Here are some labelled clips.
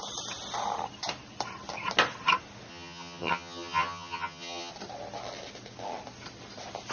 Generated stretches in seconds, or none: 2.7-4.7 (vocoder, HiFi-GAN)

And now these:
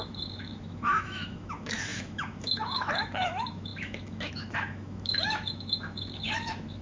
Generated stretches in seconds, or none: 0.0-6.8 (autoencoder, DAC-VAE)